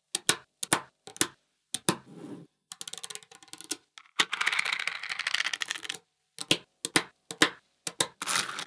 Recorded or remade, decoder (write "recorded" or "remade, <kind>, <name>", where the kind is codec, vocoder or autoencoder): recorded